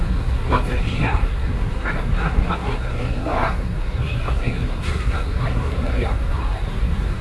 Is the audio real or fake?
fake